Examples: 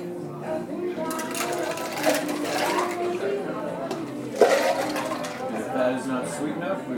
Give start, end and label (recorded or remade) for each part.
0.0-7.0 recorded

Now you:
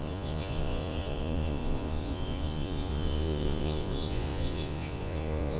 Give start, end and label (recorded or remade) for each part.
0.0-5.6 remade

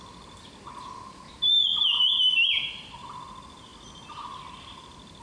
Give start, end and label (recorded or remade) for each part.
0.0-5.2 recorded